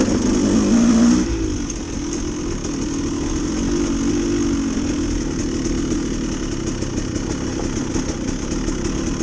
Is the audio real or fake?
real